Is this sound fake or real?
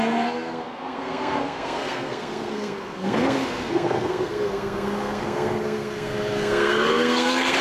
fake